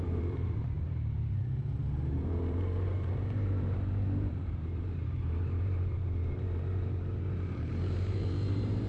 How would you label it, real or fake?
fake